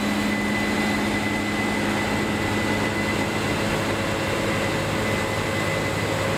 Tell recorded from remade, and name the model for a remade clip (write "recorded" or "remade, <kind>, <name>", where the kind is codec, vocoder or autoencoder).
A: recorded